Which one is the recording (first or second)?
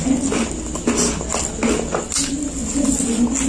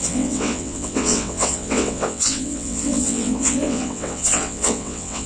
first